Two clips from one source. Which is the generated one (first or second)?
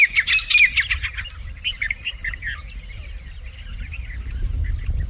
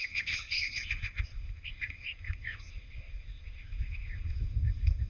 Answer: second